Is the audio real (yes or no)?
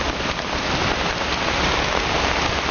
yes